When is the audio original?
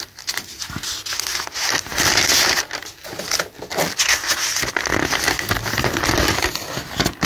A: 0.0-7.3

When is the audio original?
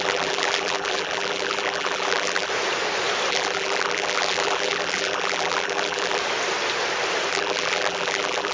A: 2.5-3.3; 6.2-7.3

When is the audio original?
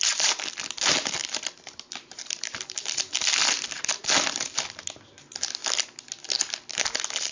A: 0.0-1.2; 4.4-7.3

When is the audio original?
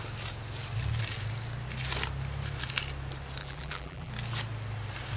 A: 0.0-3.4; 4.1-5.2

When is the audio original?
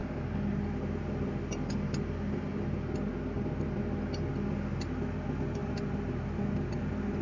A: 0.0-7.2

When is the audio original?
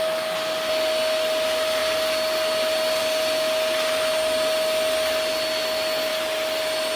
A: 0.0-6.1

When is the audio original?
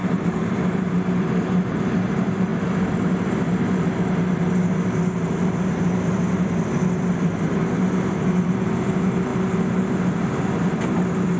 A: 2.5-7.5; 9.3-11.4